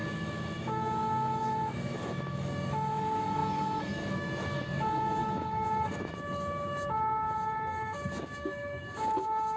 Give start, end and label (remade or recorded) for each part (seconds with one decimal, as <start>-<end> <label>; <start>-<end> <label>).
0.0-9.6 remade

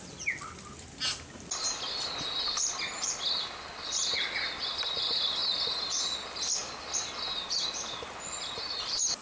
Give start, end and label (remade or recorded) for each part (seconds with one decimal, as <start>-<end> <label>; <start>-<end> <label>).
0.0-9.2 recorded

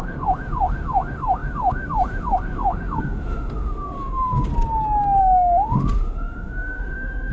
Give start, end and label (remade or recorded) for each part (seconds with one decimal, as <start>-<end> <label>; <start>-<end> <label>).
0.0-4.5 remade; 4.5-5.2 recorded; 5.2-7.3 remade